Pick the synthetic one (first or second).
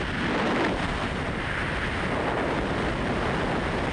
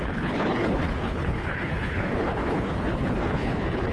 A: second